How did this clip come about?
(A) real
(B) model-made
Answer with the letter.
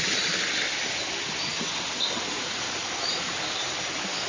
A